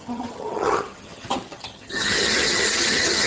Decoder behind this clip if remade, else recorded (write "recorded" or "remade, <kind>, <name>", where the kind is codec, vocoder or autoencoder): remade, vocoder, HiFi-GAN